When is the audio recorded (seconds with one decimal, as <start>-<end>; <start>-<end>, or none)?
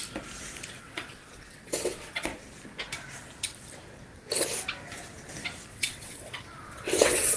0.0-0.8; 2.3-5.7